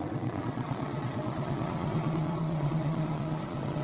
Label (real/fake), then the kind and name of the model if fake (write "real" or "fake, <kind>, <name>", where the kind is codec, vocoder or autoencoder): fake, vocoder, Vocos